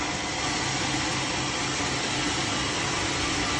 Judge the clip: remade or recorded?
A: recorded